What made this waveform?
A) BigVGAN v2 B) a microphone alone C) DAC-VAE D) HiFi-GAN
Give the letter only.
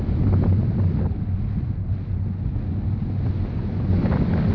B